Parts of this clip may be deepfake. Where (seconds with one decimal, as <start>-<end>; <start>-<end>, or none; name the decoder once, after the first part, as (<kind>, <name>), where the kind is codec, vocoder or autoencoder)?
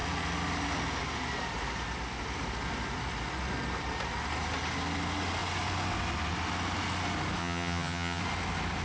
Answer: 7.4-8.2 (vocoder, HiFi-GAN)